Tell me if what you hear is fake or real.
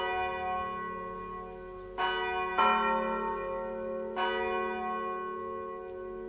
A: real